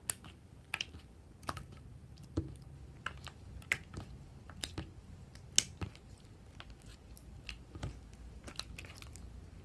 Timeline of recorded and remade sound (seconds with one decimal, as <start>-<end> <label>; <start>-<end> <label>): 0.0-9.6 recorded